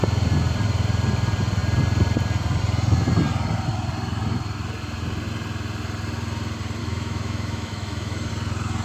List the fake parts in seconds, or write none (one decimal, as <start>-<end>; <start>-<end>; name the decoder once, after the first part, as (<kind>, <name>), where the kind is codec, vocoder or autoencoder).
6.8-8.3 (autoencoder, DAC-VAE)